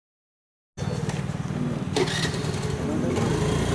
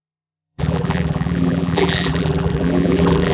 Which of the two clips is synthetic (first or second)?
second